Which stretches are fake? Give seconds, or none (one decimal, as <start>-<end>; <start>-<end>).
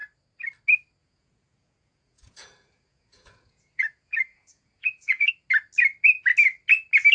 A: 1.0-5.3